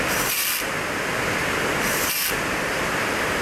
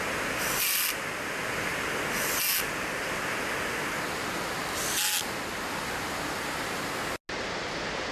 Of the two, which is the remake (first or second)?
first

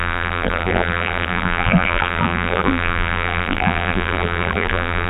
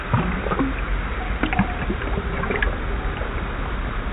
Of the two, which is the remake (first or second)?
first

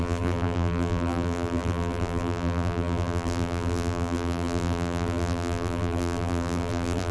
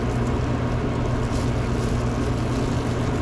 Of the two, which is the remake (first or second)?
first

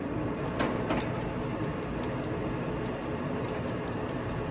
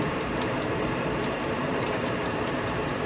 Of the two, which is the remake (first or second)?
second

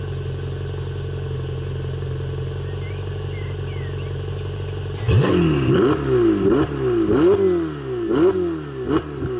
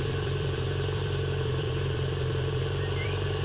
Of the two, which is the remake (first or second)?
second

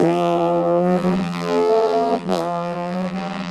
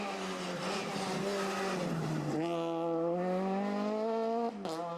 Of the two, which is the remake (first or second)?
first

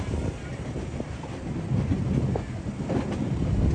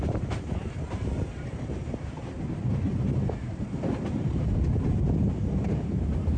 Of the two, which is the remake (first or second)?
second